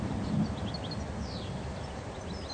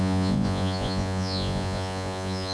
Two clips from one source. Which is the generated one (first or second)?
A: second